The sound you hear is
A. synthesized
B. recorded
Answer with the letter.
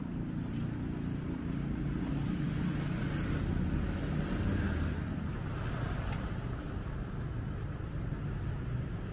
B